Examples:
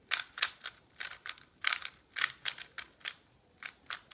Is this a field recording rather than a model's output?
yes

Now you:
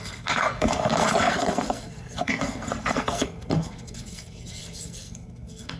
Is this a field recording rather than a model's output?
no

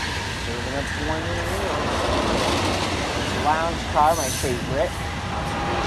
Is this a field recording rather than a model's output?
yes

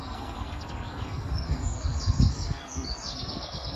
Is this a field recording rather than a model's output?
no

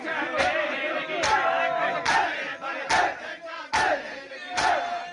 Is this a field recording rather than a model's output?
yes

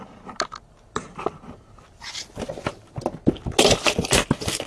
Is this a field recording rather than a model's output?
yes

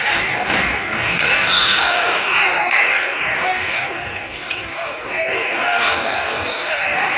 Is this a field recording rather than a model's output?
no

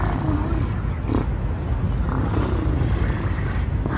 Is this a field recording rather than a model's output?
yes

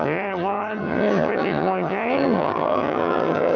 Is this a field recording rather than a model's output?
no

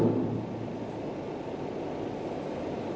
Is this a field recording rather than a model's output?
yes